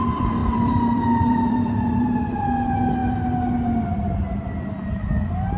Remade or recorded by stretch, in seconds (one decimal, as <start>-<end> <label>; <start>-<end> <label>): 0.0-0.4 recorded; 0.4-2.4 remade; 2.4-5.6 recorded